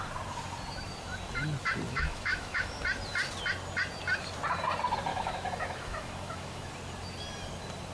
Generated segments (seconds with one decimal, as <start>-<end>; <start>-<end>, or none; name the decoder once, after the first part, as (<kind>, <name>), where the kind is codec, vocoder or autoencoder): 1.9-2.8 (autoencoder, DAC-VAE); 5.1-6.7